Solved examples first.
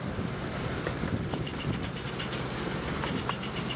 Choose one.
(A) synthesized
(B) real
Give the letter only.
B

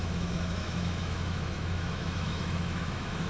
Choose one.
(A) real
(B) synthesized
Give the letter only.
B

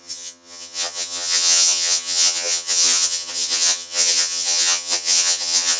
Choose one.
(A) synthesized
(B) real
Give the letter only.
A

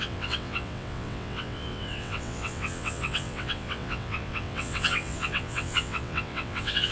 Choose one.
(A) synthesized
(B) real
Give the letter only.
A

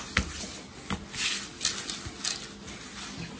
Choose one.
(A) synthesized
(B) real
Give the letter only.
B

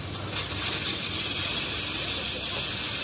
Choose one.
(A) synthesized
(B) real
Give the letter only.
B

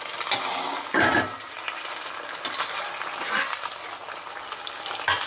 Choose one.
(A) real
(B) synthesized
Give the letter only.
A